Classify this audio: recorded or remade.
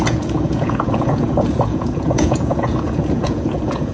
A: remade